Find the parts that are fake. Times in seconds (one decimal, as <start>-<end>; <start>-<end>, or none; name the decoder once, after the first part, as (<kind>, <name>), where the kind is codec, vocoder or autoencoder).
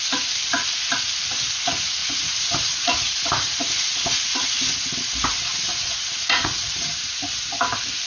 2.0-3.9 (vocoder, Vocos); 5.7-7.2